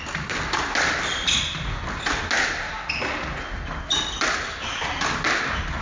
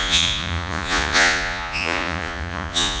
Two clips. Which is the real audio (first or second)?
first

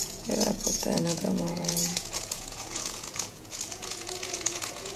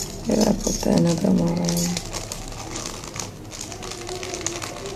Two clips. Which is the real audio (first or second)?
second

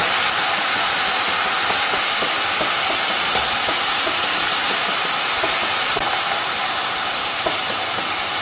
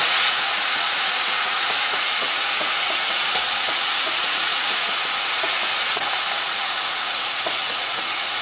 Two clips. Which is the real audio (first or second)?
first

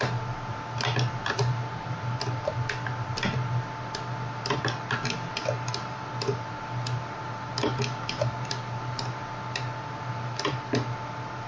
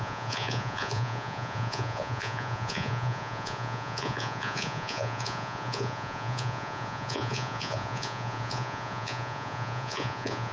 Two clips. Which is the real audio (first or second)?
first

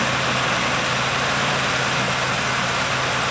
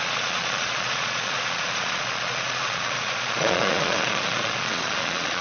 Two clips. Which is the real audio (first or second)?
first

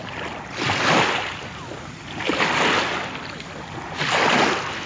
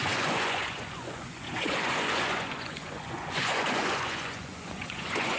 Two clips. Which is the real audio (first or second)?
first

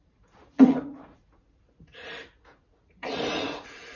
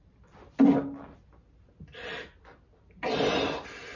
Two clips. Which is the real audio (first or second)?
second